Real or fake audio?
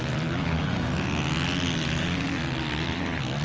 real